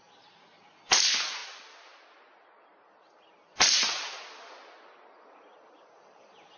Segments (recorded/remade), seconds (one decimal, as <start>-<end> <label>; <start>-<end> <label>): 0.0-6.6 recorded